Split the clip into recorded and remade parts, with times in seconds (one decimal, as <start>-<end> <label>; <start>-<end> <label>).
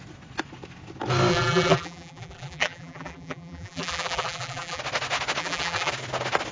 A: 0.0-1.3 recorded; 1.3-4.8 remade; 4.8-5.4 recorded; 5.4-5.9 remade; 5.9-6.5 recorded